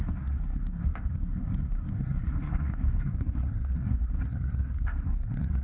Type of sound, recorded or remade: remade